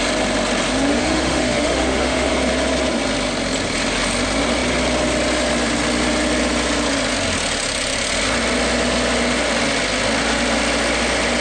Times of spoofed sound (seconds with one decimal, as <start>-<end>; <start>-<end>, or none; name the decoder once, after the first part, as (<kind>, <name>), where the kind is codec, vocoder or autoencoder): 0.9-2.3 (autoencoder, DAC-VAE)